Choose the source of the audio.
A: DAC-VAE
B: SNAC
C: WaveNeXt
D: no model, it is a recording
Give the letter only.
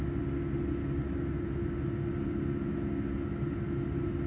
D